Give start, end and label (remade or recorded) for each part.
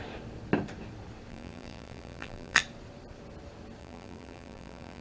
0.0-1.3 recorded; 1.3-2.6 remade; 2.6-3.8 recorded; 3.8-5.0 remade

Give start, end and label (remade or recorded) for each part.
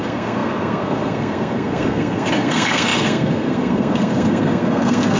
0.0-5.2 remade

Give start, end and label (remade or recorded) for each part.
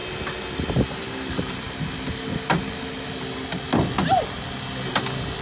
0.0-5.4 recorded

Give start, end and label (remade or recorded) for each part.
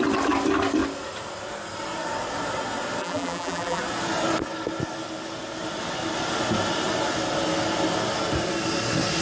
0.0-3.0 recorded; 3.0-3.8 remade; 3.8-9.2 recorded